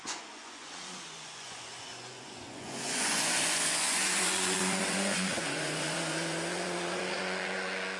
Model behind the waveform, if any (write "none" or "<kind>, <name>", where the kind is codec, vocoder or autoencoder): vocoder, Vocos